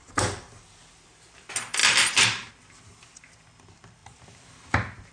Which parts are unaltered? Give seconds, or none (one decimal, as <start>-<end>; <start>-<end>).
0.0-1.8; 2.5-4.0

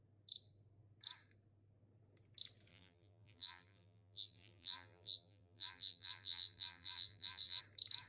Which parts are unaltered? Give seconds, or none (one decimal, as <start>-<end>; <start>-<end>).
0.0-2.7; 7.6-8.1

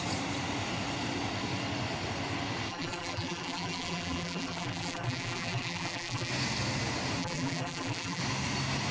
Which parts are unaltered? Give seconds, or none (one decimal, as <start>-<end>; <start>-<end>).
0.0-2.7; 6.3-7.2; 8.2-8.9

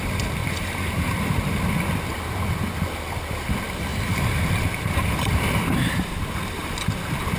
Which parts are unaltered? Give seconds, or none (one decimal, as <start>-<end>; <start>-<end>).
0.0-0.4; 1.6-3.9; 5.9-7.4

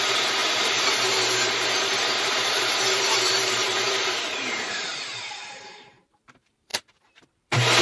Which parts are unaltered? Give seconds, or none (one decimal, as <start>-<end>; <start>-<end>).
none

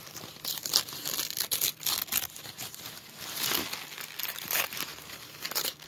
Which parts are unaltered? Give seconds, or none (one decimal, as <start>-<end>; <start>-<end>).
0.7-4.2

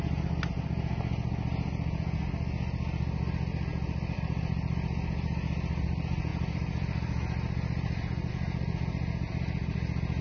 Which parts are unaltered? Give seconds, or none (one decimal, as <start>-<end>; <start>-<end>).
0.0-6.3; 8.3-10.2

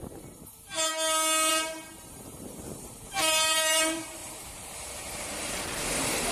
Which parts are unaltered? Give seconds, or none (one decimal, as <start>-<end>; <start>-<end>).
0.9-1.5